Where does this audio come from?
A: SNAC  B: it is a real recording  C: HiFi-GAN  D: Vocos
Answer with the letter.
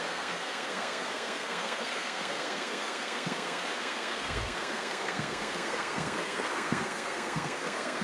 A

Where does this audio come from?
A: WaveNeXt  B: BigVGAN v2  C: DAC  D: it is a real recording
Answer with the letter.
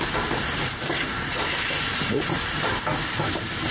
B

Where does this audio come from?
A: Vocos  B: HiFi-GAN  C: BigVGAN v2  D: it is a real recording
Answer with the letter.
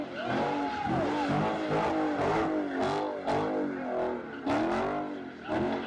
D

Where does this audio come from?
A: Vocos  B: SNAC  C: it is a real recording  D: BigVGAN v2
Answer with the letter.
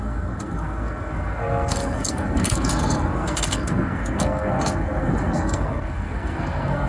B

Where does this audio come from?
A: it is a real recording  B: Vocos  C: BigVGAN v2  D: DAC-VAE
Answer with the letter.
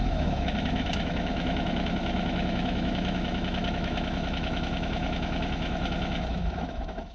D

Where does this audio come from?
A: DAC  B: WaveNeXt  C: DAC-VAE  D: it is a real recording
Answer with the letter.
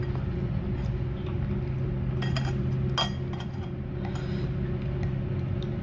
D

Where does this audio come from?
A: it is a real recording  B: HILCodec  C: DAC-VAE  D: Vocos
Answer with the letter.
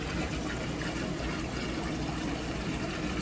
A